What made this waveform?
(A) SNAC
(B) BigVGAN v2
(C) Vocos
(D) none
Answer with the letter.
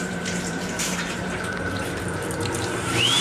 B